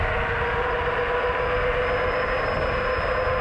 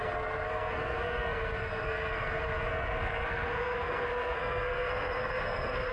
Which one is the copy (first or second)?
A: second